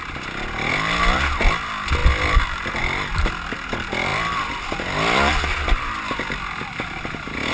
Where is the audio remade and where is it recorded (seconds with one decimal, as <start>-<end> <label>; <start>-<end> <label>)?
0.0-7.5 recorded